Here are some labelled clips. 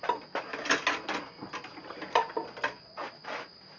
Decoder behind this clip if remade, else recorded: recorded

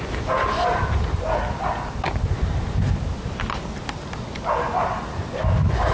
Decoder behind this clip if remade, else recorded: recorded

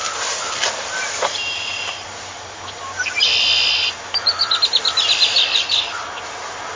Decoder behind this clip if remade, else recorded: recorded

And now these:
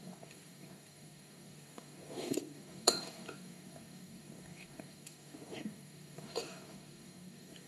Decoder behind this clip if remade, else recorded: remade, codec, DAC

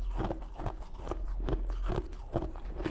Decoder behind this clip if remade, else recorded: recorded